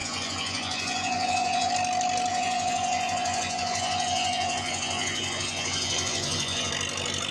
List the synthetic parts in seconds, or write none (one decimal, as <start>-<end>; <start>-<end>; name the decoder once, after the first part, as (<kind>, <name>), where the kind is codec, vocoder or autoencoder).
0.0-1.7 (vocoder, Vocos); 2.3-6.7